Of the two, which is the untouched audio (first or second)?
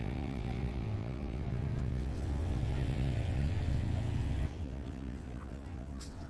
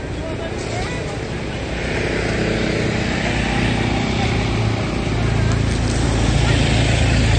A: second